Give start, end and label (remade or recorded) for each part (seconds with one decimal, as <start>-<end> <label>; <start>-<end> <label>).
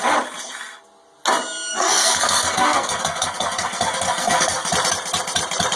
0.0-1.7 recorded; 1.7-4.7 remade; 4.7-5.8 recorded